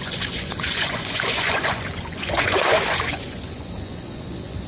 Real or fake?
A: fake